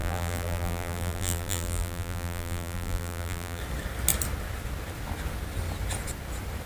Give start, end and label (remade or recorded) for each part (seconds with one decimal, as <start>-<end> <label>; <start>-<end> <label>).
0.0-3.6 remade; 3.6-6.7 recorded